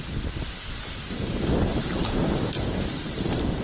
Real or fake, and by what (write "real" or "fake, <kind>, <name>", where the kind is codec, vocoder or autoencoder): real